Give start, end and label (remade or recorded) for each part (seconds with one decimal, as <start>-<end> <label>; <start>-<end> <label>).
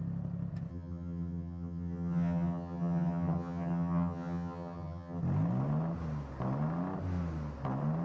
0.0-0.7 recorded; 0.7-5.2 remade; 5.2-8.0 recorded